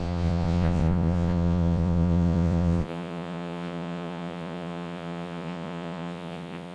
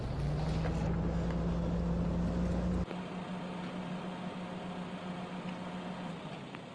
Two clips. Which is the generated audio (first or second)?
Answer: first